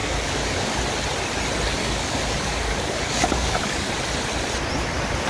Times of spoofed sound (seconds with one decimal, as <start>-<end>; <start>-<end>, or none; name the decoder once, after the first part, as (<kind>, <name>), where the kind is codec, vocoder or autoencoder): 0.0-0.8 (codec, DAC); 1.8-3.9